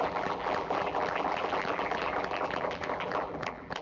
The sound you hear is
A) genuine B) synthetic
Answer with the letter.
B